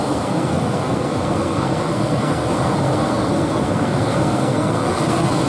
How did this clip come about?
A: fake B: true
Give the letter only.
A